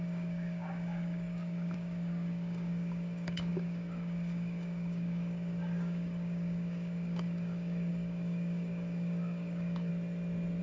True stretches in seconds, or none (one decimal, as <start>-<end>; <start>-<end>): 9.9-10.6